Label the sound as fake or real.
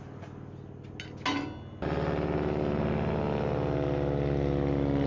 real